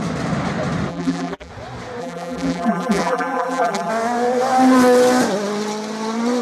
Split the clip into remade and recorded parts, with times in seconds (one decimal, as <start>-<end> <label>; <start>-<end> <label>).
0.0-0.9 recorded; 0.9-1.5 remade; 1.5-2.0 recorded; 2.0-3.9 remade; 3.9-6.4 recorded